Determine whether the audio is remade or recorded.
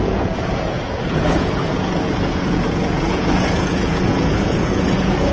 remade